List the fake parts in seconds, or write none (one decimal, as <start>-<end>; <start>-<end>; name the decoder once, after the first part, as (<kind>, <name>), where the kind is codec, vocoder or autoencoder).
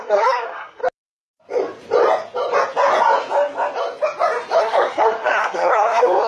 0.0-0.8 (codec, SNAC); 4.6-6.3